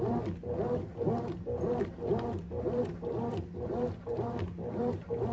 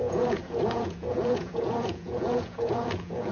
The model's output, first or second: second